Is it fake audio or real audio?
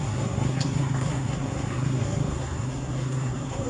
fake